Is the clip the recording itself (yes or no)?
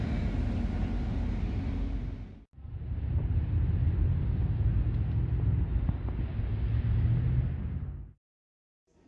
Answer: yes